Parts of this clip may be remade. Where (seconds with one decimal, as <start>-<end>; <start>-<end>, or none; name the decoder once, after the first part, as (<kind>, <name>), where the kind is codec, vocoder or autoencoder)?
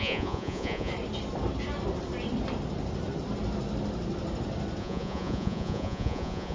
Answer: 0.0-0.9 (vocoder, Vocos); 4.8-6.5